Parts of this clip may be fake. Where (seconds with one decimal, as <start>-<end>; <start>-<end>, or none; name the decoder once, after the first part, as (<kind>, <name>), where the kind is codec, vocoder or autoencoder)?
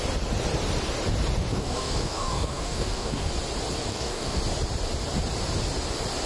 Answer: 1.5-3.3 (codec, DAC); 3.9-4.4